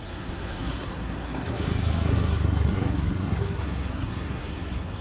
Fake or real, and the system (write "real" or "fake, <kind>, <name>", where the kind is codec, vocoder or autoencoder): fake, codec, SNAC